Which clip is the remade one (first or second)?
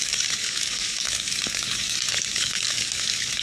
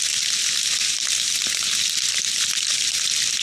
first